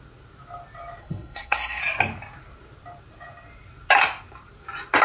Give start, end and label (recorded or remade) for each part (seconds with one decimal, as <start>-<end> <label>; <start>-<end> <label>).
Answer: 0.0-1.0 recorded; 1.0-1.8 remade; 1.8-5.0 recorded